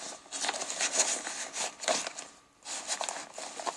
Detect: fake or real real